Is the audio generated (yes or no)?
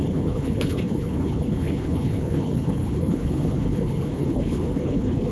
yes